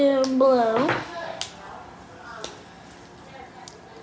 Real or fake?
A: real